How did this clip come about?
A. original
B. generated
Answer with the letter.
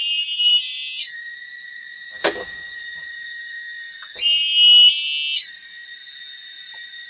A